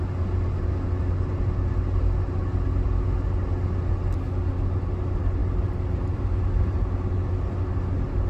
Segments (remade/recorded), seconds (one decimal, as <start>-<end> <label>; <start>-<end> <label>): 0.0-8.3 recorded